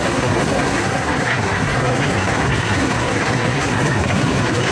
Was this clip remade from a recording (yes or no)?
yes